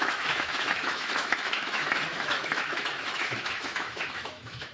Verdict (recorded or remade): remade